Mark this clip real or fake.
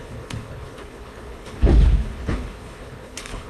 fake